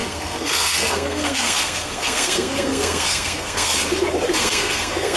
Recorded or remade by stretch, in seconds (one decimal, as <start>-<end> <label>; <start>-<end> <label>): 0.0-3.7 remade; 3.7-4.4 recorded; 4.4-5.2 remade